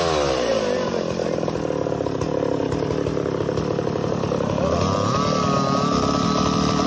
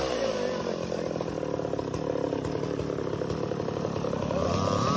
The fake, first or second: second